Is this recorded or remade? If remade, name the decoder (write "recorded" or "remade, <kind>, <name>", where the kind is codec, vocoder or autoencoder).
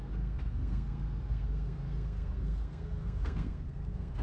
remade, codec, SNAC